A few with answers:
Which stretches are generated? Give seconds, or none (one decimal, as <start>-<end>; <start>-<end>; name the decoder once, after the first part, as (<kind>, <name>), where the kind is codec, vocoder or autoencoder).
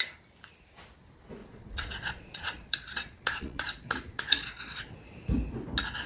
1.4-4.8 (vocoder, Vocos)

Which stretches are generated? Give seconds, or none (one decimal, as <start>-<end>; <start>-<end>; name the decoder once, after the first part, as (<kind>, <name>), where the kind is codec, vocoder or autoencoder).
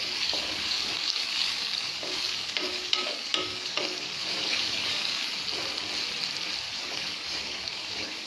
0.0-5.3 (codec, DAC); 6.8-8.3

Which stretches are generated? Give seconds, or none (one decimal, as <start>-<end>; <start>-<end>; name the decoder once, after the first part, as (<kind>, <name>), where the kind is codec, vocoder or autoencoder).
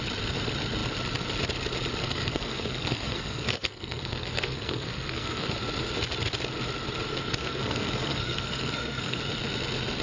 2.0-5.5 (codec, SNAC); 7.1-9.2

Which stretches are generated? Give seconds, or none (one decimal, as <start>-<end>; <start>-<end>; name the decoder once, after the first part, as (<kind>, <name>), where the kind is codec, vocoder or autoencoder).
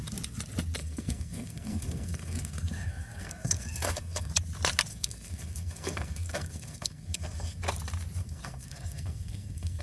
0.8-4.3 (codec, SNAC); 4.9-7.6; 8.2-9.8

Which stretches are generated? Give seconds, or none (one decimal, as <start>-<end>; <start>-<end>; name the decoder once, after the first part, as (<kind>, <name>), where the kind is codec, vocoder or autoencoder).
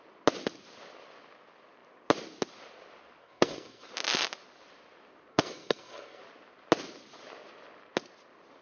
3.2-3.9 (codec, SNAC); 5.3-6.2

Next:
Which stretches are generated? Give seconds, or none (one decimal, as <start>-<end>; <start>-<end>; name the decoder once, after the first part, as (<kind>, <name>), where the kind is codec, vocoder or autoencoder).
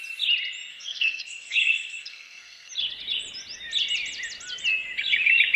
0.7-2.7 (codec, SNAC)